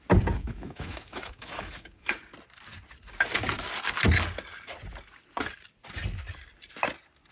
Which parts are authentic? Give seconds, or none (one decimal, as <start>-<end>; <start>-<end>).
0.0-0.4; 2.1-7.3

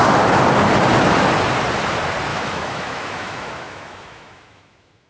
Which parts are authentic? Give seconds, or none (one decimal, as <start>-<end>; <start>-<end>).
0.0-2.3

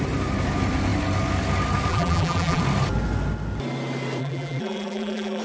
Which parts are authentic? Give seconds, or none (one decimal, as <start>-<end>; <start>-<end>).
0.0-1.9; 2.6-4.2